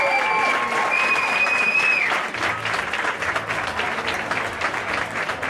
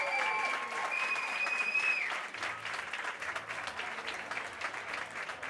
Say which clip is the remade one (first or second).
second